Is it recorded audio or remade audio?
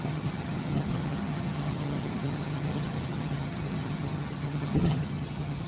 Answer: remade